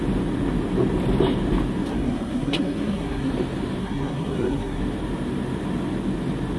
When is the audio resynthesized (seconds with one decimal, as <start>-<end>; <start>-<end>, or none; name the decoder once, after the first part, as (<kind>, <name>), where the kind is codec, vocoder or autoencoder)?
1.9-3.3 (codec, SNAC); 3.8-4.8